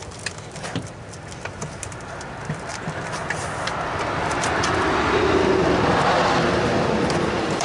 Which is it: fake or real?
fake